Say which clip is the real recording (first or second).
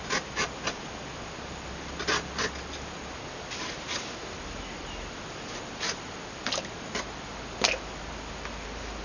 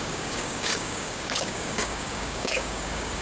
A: first